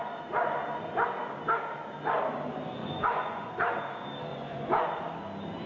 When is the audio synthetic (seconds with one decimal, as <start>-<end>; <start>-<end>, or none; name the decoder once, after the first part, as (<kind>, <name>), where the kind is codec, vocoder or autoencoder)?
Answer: 2.8-3.5 (vocoder, Vocos); 4.3-4.8